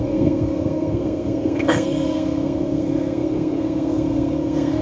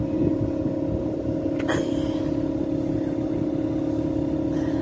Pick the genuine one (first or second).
second